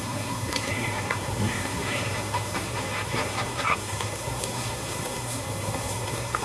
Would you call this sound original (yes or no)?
no